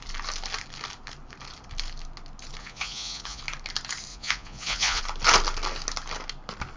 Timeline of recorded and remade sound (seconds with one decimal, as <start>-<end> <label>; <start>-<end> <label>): 0.0-2.6 recorded; 2.6-3.4 remade; 3.4-4.1 recorded; 4.1-5.0 remade; 5.0-6.8 recorded